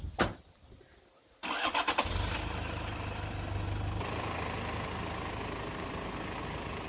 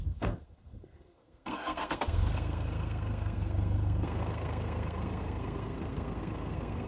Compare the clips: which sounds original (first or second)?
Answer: first